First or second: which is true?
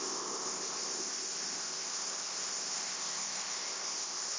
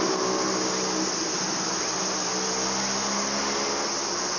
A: second